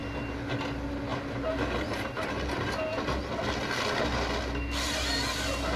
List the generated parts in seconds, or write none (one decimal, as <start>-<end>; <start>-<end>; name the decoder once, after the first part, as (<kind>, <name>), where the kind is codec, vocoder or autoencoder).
none